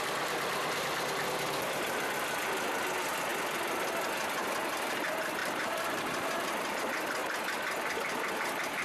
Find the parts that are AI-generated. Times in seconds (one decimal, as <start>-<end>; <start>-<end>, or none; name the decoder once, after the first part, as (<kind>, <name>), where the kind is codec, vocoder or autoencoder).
5.4-6.8 (vocoder, BigVGAN v2)